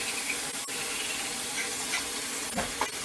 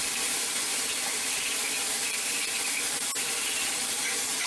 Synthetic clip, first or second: second